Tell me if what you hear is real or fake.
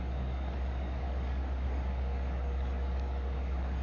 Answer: fake